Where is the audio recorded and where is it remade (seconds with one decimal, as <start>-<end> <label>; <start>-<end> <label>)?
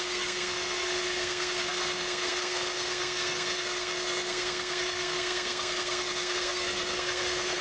0.0-7.6 remade